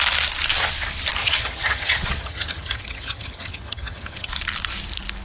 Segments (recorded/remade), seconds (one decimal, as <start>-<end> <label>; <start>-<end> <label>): 0.0-1.2 recorded; 1.2-4.3 remade; 4.3-5.2 recorded